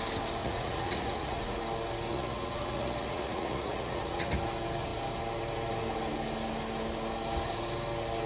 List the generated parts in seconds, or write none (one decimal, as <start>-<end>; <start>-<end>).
0.4-1.6; 2.1-4.3

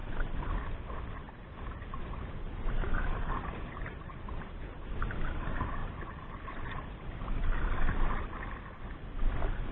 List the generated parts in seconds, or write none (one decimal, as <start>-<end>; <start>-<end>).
0.0-0.6; 2.0-4.8; 5.8-7.3

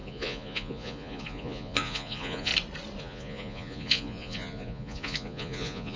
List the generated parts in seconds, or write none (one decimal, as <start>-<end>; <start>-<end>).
0.0-2.5; 3.0-6.0

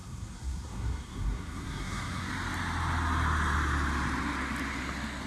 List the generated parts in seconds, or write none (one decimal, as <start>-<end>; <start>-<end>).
0.0-2.3

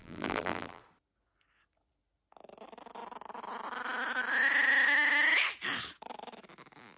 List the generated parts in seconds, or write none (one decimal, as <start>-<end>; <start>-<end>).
0.0-0.8

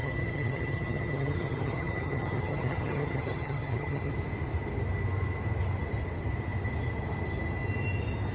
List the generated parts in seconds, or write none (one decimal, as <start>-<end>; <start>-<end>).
0.0-4.1

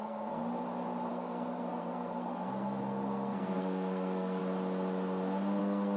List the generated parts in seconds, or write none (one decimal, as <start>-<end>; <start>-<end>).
0.0-0.4; 1.1-4.4; 5.6-6.0

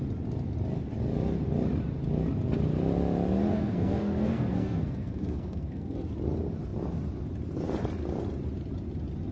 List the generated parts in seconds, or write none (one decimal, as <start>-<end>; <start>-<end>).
3.5-6.1